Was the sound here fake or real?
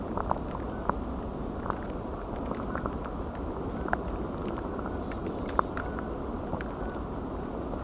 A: real